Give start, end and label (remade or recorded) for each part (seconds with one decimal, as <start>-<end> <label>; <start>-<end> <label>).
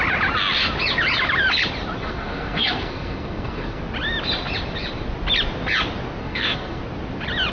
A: 0.0-2.0 recorded; 2.0-3.8 remade; 3.8-6.2 recorded; 6.2-6.8 remade; 6.8-7.5 recorded